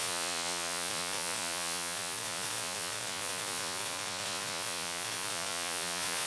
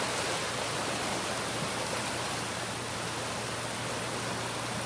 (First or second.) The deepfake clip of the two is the first